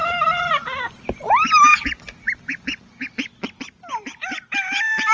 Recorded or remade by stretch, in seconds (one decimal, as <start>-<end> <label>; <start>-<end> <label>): 0.0-5.1 recorded